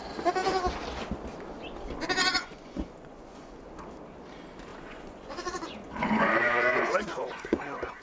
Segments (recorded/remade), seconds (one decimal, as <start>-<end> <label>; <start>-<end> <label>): 0.0-2.2 recorded; 2.2-3.5 remade; 3.5-4.7 recorded; 4.7-8.0 remade